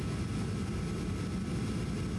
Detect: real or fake real